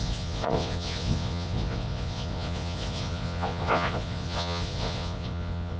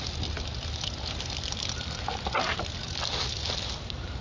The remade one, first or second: first